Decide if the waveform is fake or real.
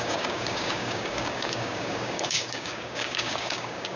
fake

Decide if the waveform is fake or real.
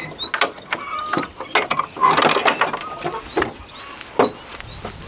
real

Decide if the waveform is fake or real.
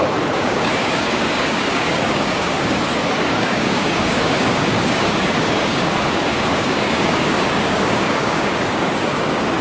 fake